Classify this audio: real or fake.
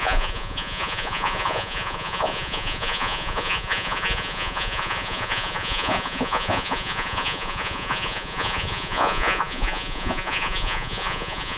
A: fake